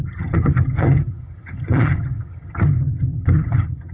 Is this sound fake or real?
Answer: fake